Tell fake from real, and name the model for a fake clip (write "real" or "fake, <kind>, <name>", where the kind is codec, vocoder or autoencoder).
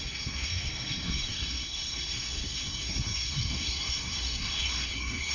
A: fake, codec, SNAC